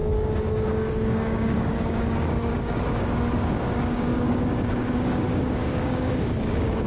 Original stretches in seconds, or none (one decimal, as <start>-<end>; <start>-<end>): none